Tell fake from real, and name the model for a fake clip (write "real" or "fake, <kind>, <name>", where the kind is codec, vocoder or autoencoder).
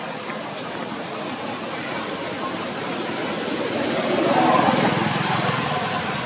real